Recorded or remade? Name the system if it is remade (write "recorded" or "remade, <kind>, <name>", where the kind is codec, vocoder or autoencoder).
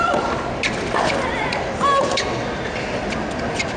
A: recorded